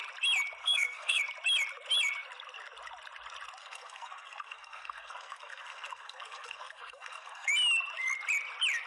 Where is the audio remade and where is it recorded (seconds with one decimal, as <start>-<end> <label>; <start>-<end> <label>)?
0.0-0.6 recorded; 0.6-1.2 remade; 1.2-3.6 recorded; 3.6-7.5 remade; 7.5-8.9 recorded